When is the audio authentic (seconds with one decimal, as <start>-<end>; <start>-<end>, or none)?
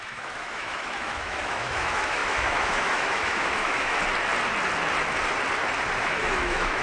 4.0-6.0